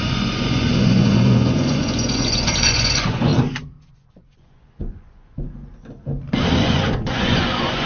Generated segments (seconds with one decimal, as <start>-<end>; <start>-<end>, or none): 0.0-3.3; 3.9-5.7; 6.6-7.9

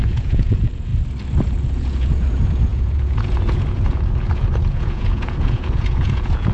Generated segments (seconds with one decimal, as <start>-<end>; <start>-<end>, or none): 0.0-0.9; 1.4-6.5

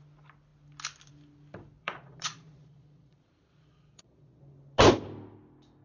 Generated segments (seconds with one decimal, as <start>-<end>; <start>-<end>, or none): 1.8-4.4

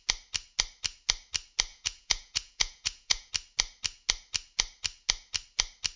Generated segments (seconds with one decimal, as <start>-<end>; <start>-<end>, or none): 1.7-3.3

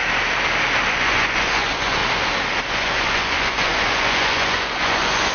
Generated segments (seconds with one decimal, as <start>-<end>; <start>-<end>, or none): 0.9-2.0; 2.7-5.3

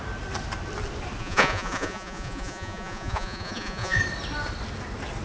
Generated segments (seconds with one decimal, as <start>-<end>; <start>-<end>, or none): 1.2-4.0